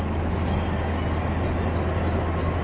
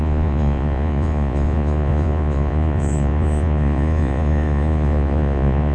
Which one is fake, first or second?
second